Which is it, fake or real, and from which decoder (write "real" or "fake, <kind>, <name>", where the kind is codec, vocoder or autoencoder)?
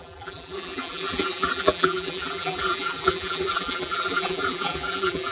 fake, vocoder, BigVGAN v2